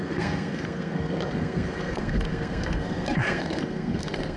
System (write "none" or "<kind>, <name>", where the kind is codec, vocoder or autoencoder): codec, SNAC